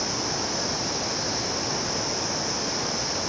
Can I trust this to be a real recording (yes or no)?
yes